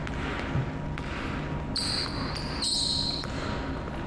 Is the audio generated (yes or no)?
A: no